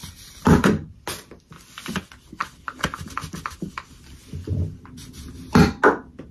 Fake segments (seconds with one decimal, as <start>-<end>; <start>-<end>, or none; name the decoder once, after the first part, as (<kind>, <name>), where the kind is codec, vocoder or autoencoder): 0.0-0.9 (vocoder, BigVGAN v2)